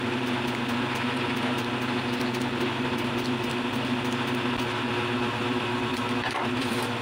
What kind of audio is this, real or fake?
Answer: fake